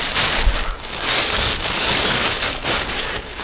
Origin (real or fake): fake